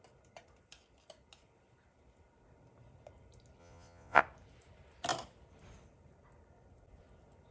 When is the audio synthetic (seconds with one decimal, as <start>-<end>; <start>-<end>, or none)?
3.6-4.2